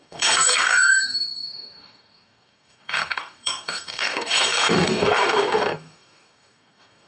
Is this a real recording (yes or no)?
no